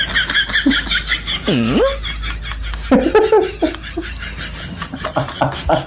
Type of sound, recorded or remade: recorded